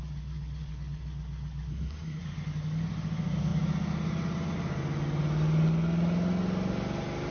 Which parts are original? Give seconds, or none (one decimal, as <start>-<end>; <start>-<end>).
0.0-1.7; 2.2-7.3